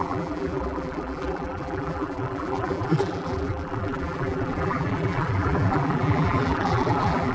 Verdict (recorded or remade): remade